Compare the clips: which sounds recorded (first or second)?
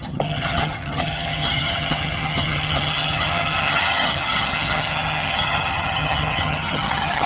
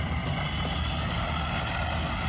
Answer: second